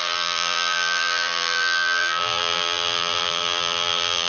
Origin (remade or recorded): remade